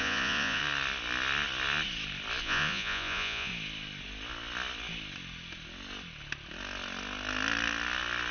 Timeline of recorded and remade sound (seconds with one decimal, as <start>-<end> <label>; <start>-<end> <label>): 0.0-0.6 remade; 0.6-2.4 recorded; 2.4-3.5 remade; 3.5-8.3 recorded

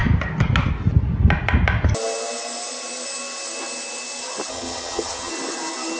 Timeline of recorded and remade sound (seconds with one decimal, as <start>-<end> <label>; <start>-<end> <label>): 0.0-4.5 recorded; 4.5-5.3 remade; 5.3-6.0 recorded

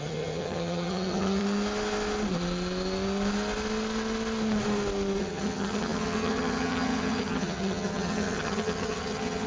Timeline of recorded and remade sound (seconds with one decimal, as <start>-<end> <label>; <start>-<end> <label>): 0.0-1.4 remade; 1.4-5.2 recorded; 5.2-9.5 remade

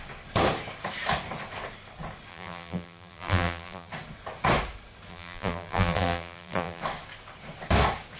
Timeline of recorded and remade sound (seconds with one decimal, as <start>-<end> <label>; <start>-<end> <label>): 0.0-2.3 recorded; 2.3-3.9 remade; 3.9-5.1 recorded; 5.1-6.8 remade; 6.8-8.2 recorded

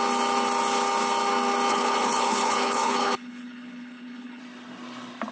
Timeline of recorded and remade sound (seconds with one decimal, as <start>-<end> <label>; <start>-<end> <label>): 0.0-1.7 recorded; 1.7-4.4 remade; 4.4-5.3 recorded

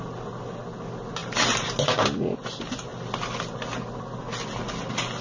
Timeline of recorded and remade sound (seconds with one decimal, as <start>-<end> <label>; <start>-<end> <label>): 0.0-5.2 recorded

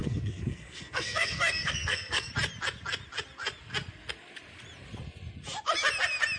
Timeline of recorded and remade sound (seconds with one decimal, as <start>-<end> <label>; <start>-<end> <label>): 0.0-2.3 remade; 2.3-6.4 recorded

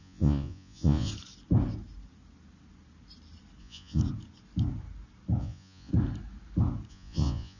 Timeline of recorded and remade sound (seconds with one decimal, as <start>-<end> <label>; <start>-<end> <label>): 0.0-1.1 remade; 1.1-3.6 recorded; 3.6-4.0 remade; 4.0-5.4 recorded; 5.4-5.9 remade; 5.9-6.9 recorded; 6.9-7.6 remade